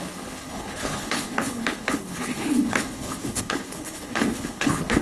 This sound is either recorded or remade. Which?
remade